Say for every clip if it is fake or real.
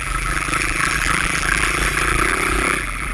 fake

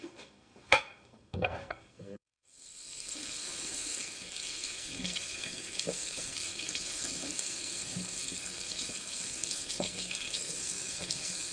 fake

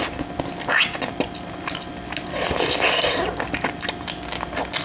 real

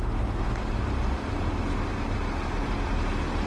real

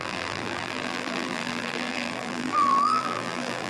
fake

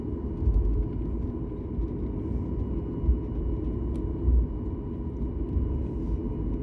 real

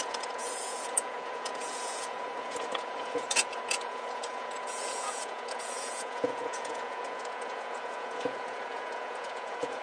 fake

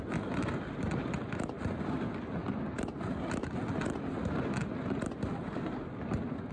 real